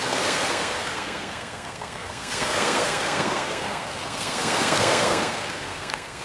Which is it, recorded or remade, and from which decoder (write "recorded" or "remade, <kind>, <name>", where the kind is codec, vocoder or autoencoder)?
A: remade, codec, SNAC